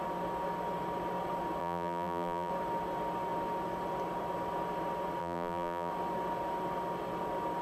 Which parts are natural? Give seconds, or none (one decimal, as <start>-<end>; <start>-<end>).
0.0-1.6; 2.5-5.2; 5.9-7.6